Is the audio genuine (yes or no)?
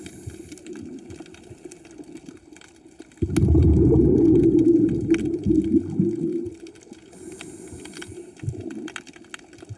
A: yes